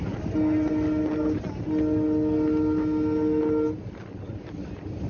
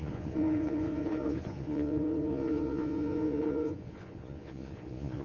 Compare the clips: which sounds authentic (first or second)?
first